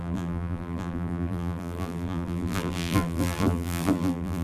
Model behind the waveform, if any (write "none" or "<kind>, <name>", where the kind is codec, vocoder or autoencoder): vocoder, BigVGAN v2